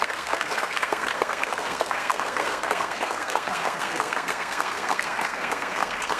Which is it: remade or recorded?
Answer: remade